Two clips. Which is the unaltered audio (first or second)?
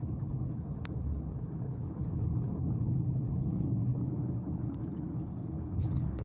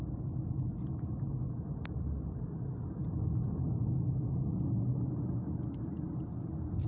second